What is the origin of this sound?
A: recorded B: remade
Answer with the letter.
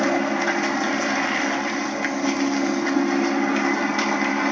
A